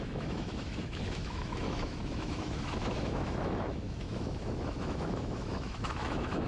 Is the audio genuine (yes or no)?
no